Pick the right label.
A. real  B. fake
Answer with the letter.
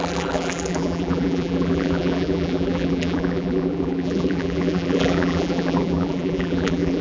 B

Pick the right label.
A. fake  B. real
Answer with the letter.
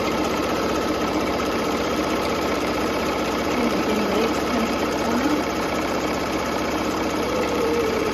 A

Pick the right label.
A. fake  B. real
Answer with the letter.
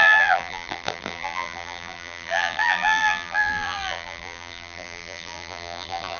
A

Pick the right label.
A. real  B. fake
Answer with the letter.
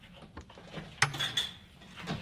A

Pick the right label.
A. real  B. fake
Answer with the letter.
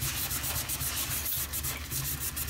A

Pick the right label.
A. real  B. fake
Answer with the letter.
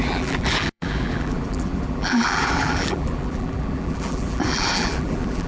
B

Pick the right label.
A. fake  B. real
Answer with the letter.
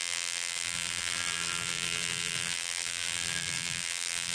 A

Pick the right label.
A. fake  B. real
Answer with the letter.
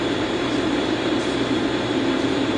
A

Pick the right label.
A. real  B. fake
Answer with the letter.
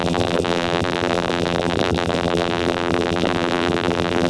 B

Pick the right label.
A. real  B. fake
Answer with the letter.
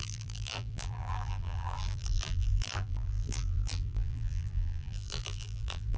B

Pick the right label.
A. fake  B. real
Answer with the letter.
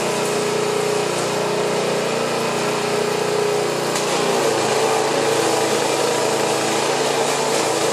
B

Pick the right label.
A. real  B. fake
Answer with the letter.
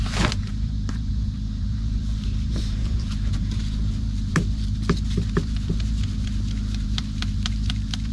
B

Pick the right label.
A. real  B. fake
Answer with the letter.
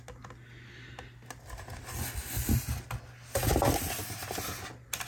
A